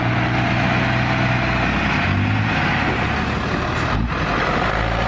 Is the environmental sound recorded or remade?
recorded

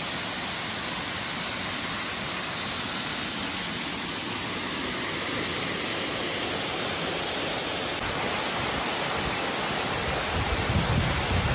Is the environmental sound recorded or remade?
recorded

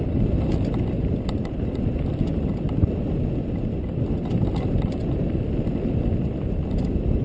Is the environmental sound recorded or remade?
recorded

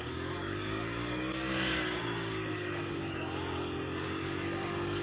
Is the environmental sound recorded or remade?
remade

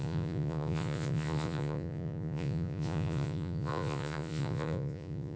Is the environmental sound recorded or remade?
remade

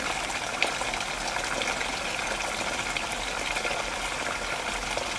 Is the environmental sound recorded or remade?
recorded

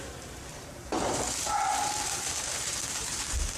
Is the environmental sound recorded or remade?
remade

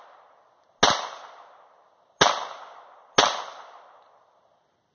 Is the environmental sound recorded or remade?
recorded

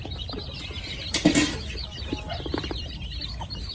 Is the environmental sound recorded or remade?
recorded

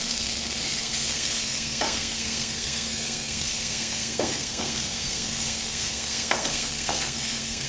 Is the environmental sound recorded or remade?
remade